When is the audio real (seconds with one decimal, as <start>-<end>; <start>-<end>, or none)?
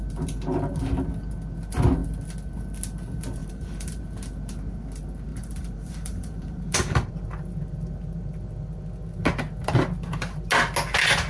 0.0-3.4; 4.0-5.3; 7.1-11.3